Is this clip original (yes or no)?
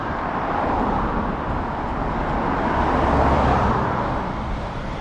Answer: no